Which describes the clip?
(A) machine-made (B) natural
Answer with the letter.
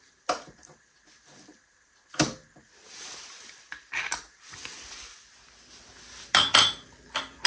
B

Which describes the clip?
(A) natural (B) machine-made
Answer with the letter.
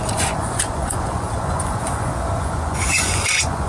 B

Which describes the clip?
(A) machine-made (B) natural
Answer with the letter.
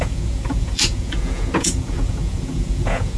A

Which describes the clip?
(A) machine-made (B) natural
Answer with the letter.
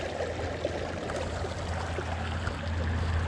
B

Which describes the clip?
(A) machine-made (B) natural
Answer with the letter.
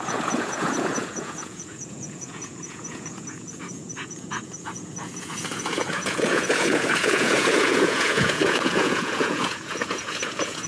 A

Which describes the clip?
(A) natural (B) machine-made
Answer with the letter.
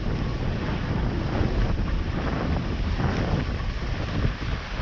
A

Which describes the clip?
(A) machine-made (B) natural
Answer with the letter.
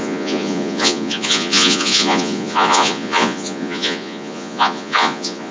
A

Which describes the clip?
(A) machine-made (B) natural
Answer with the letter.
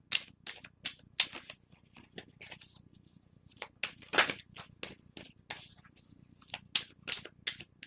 B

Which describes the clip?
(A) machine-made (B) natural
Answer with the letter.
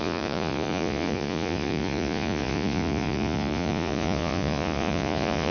A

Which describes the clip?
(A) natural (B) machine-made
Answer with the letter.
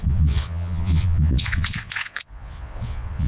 B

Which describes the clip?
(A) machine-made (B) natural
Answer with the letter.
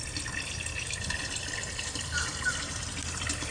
B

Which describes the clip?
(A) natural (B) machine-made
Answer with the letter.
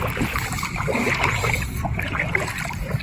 A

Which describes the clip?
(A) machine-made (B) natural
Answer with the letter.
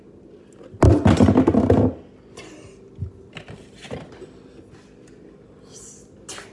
B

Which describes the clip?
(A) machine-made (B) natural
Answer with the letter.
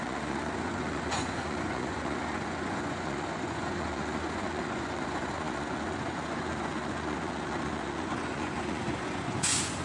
A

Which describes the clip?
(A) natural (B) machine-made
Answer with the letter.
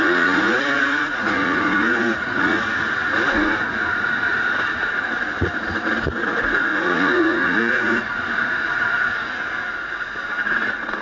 B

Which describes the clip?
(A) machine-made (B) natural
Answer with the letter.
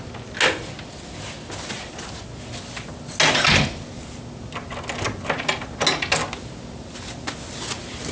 B